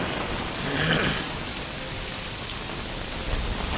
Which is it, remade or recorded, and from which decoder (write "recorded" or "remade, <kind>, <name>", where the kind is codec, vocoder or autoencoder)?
recorded